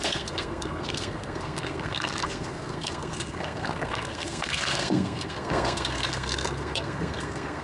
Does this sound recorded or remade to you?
remade